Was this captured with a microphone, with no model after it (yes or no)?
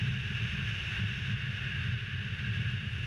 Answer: yes